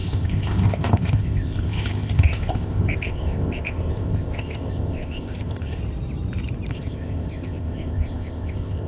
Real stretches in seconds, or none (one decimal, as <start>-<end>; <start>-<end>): 5.8-6.7